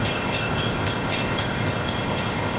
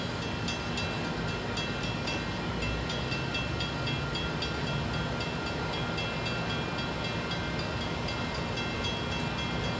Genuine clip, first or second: second